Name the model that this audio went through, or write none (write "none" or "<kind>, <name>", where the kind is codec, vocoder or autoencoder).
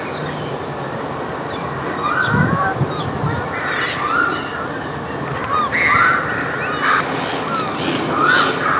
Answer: none